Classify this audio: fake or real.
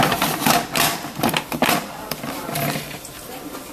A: fake